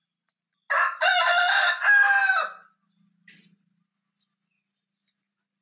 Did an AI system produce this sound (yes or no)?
no